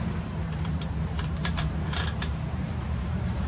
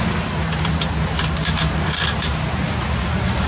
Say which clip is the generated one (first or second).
first